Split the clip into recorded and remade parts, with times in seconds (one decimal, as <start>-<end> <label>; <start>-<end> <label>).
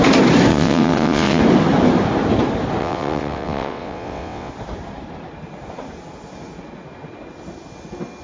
0.0-0.5 recorded; 0.5-1.4 remade; 1.4-2.8 recorded; 2.8-4.5 remade; 4.5-8.2 recorded